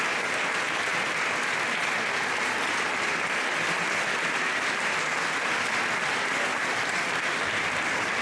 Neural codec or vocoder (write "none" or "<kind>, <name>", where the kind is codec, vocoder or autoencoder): none